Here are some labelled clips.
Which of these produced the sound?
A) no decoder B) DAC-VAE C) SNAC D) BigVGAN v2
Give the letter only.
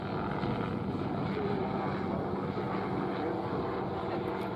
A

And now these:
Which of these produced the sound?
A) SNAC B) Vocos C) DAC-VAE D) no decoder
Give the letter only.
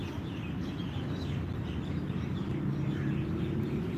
D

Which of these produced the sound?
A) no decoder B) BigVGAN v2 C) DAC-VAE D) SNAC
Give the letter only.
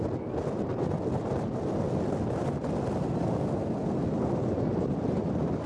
A